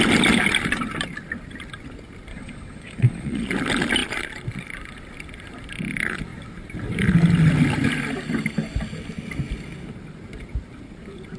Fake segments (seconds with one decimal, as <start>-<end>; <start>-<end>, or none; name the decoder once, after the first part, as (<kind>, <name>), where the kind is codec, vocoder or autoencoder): 2.3-3.5 (vocoder, Vocos)